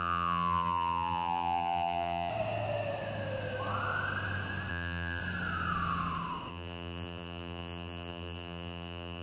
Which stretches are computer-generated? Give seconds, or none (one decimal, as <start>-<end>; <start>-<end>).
0.0-2.3; 4.7-5.2; 6.5-9.2